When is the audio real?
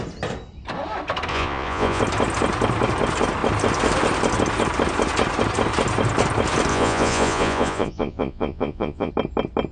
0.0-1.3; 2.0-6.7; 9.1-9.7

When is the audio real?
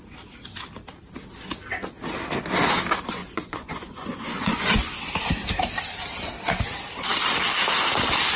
0.0-3.2; 5.0-8.4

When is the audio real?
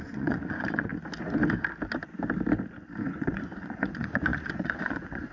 0.9-3.0